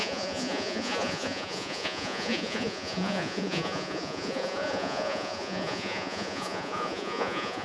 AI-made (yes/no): yes